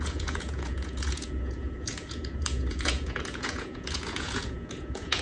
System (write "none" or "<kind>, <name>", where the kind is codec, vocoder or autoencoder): vocoder, Vocos